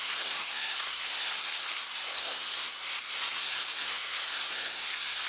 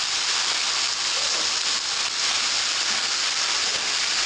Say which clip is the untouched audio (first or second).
second